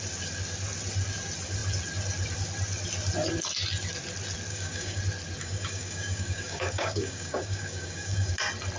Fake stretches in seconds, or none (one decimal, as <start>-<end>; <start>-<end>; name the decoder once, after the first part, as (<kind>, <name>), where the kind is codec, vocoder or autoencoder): 4.5-5.0 (codec, DAC); 5.4-8.3